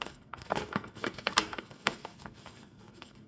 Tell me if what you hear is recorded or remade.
remade